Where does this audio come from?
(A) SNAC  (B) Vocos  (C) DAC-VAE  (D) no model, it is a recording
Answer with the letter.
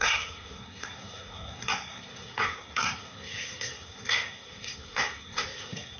A